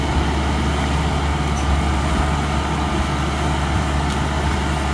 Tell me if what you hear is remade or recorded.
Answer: recorded